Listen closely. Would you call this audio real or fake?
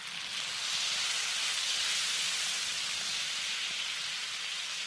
real